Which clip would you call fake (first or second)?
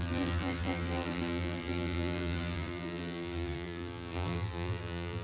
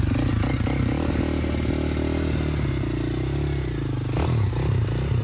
first